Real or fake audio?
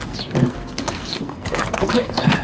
fake